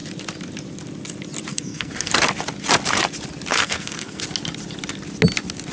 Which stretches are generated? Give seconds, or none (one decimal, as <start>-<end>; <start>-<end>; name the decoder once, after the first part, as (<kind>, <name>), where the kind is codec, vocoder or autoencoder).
1.5-2.1 (codec, SNAC); 3.5-4.2